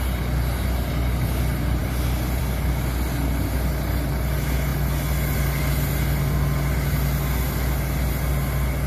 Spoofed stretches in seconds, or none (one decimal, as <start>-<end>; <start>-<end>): none